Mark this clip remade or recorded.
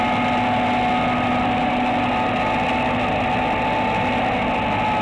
recorded